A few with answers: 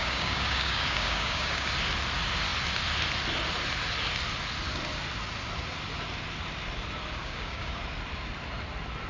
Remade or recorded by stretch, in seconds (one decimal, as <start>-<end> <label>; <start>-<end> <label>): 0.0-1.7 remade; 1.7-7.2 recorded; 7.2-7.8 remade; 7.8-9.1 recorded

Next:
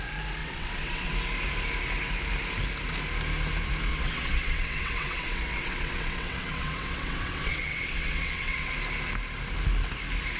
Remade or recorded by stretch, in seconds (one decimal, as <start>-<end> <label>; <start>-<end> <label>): 0.0-0.4 recorded; 0.4-1.1 remade; 1.1-3.9 recorded; 3.9-8.7 remade; 8.7-10.4 recorded

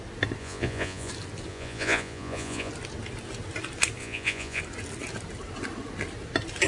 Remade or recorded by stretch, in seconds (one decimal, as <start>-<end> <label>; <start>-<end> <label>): 0.0-0.4 recorded; 0.4-1.1 remade; 1.1-1.5 recorded; 1.5-2.7 remade; 2.7-4.0 recorded; 4.0-4.6 remade; 4.6-6.7 recorded

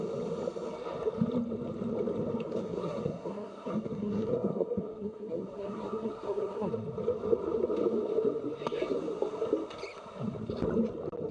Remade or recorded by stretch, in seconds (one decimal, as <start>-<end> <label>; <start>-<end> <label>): 0.0-2.6 recorded; 2.6-6.7 remade; 6.7-11.3 recorded